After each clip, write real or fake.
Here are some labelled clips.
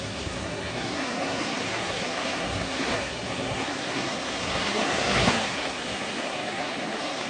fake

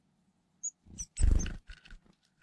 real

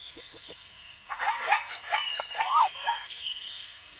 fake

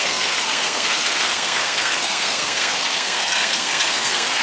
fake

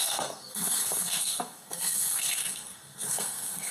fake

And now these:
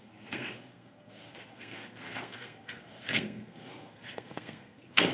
fake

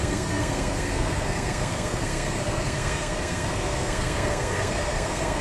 fake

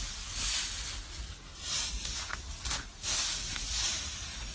real